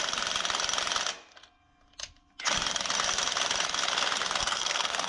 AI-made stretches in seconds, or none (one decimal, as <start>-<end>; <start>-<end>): 4.4-5.1